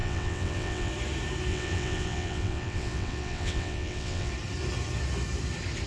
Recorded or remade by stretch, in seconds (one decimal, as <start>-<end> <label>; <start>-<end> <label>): 0.0-0.9 remade; 0.9-1.5 recorded; 1.5-4.3 remade; 4.3-5.9 recorded